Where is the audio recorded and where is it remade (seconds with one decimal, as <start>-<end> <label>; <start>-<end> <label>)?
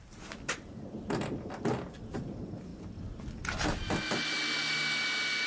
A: 0.0-5.5 recorded